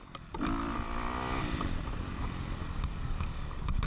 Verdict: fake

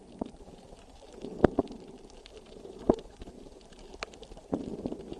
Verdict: fake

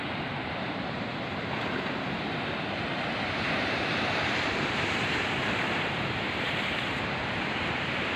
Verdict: fake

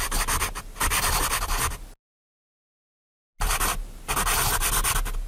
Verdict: real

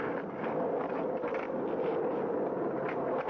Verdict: real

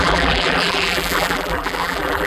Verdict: fake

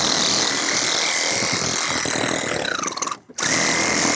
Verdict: real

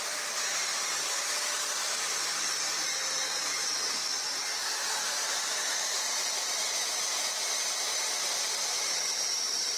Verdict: fake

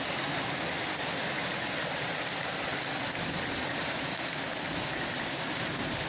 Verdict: real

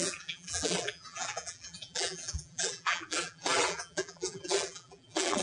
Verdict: fake